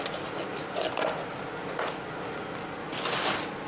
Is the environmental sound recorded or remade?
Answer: recorded